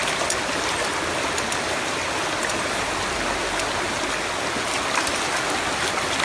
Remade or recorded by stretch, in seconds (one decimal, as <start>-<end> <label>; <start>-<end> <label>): 0.0-6.2 recorded